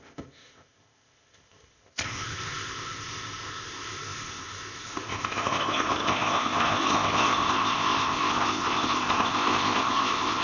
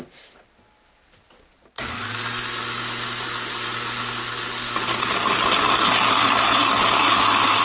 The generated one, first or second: first